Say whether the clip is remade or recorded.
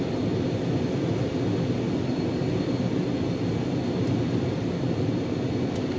recorded